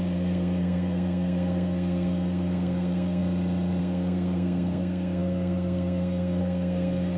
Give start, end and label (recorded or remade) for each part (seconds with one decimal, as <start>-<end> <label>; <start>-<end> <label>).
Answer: 0.0-3.2 remade; 3.2-3.8 recorded; 3.8-7.2 remade